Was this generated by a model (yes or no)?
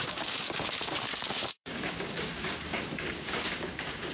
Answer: yes